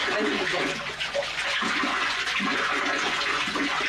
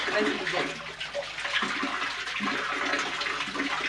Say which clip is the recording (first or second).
second